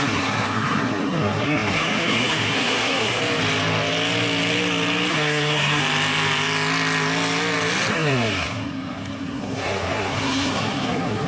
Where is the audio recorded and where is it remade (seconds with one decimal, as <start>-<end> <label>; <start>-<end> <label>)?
0.0-3.2 remade; 3.2-5.1 recorded; 5.1-5.8 remade; 5.8-7.9 recorded; 7.9-11.3 remade